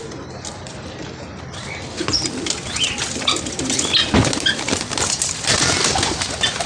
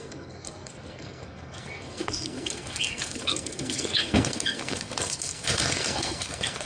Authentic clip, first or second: first